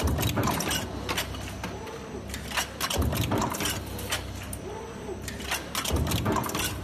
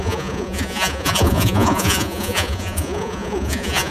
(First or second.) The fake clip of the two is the second